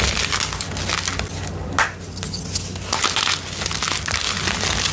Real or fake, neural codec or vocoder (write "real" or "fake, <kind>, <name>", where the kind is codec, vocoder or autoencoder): real